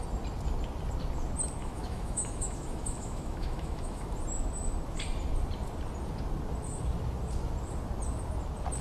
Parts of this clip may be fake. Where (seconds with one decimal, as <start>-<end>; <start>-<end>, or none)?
1.6-4.1